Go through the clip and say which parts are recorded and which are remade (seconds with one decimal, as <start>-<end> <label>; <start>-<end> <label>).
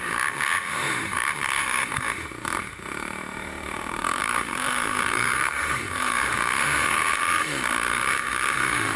0.0-9.0 remade